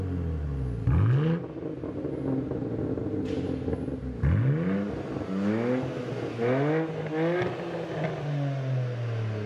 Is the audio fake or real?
real